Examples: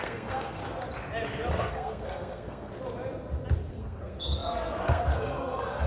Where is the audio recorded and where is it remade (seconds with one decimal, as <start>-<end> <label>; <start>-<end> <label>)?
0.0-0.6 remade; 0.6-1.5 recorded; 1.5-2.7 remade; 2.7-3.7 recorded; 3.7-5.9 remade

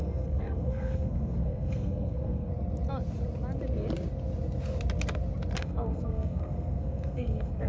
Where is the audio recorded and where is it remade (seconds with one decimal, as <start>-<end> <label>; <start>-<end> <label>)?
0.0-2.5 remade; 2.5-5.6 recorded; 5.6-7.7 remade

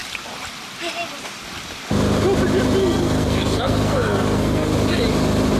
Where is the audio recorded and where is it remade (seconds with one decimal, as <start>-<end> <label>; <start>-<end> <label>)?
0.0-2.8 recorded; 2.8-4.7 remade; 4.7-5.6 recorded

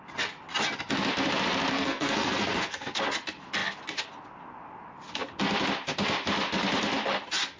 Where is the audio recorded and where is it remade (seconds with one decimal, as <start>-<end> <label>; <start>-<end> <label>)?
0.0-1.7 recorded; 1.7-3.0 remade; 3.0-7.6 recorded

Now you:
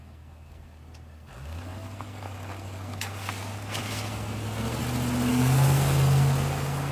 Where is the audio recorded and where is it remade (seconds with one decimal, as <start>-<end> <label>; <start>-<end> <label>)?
0.0-4.8 remade; 4.8-5.3 recorded; 5.3-6.9 remade